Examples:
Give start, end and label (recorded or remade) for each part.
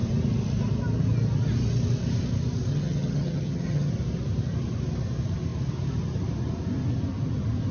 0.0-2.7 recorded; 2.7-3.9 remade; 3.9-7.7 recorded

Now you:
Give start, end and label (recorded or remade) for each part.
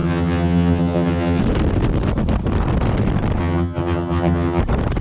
0.0-1.4 remade; 1.4-3.4 recorded; 3.4-4.6 remade; 4.6-5.0 recorded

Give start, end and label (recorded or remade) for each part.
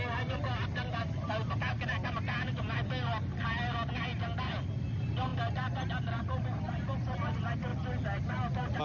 0.0-8.8 recorded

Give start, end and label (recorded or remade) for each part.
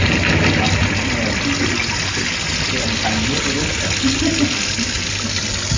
0.0-5.8 recorded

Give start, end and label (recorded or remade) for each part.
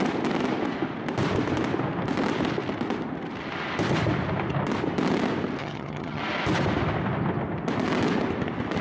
0.0-5.6 recorded; 5.6-6.2 remade; 6.2-8.8 recorded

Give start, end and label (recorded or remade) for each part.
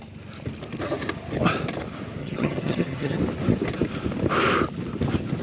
0.0-2.2 recorded; 2.2-3.2 remade; 3.2-5.4 recorded